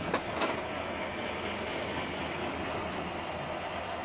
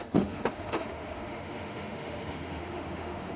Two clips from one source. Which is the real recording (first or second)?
first